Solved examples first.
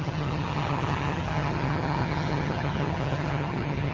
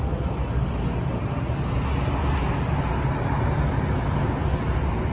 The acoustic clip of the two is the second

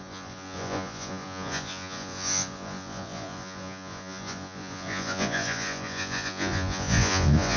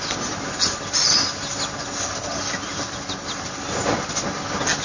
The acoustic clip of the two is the second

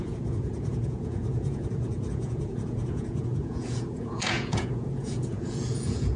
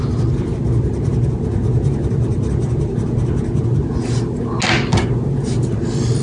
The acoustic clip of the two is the second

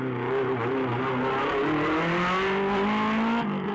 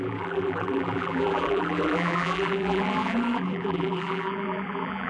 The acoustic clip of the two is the first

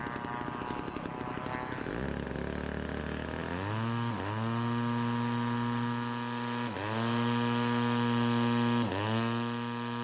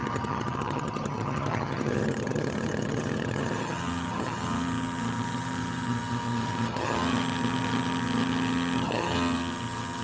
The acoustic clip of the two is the first